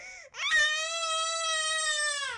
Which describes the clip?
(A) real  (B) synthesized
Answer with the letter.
A